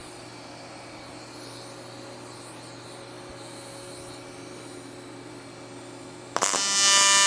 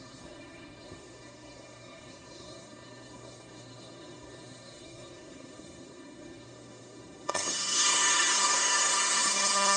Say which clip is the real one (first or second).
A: first